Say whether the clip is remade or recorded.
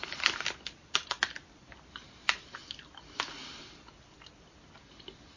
recorded